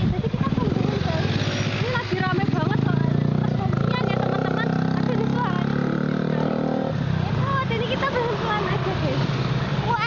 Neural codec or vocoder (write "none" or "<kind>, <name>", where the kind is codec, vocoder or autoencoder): none